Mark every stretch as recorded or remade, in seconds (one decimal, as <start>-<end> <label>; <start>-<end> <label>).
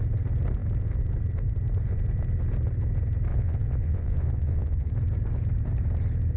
0.0-3.3 recorded; 3.3-4.9 remade; 4.9-6.4 recorded